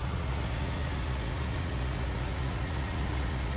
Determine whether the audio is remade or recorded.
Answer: remade